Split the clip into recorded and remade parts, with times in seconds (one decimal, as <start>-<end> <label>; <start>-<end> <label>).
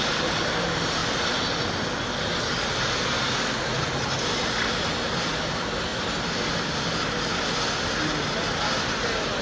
0.0-9.4 recorded